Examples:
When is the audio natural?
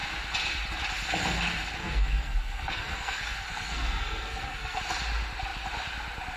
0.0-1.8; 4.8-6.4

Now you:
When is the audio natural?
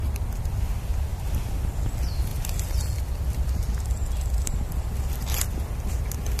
0.0-6.4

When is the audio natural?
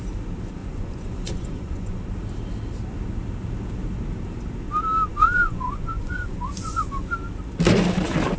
0.0-0.6; 2.0-5.1; 7.1-8.4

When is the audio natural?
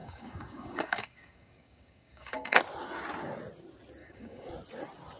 2.6-4.0; 4.5-5.2